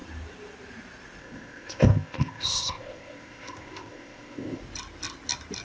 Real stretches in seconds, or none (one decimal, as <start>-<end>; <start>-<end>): 0.0-1.2; 4.6-5.6